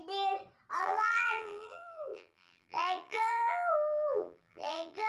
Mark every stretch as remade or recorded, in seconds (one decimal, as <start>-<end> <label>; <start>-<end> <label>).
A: 0.0-0.8 recorded; 0.8-5.1 remade